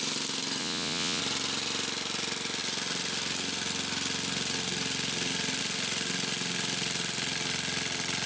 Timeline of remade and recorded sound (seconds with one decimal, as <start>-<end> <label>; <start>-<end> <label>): 0.0-0.6 recorded; 0.6-1.2 remade; 1.2-8.3 recorded